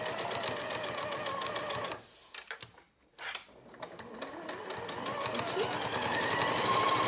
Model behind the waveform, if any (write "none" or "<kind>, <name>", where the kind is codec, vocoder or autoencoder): none